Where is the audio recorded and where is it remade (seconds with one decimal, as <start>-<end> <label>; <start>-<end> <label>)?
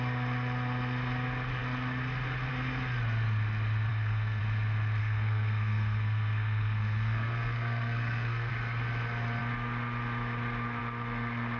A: 0.0-3.9 recorded; 3.9-4.4 remade; 4.4-5.0 recorded; 5.0-8.5 remade; 8.5-11.6 recorded